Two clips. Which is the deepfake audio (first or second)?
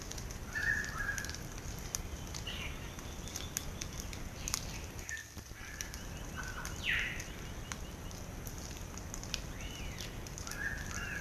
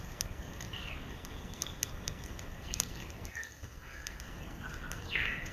second